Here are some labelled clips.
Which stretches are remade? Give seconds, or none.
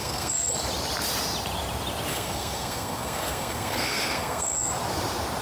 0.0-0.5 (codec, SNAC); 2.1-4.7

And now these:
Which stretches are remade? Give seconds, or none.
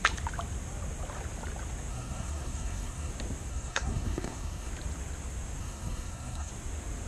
1.9-3.1 (codec, SNAC); 3.5-4.7; 5.6-6.5